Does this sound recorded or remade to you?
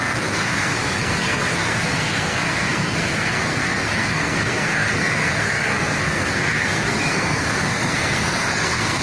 remade